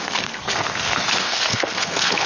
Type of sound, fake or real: fake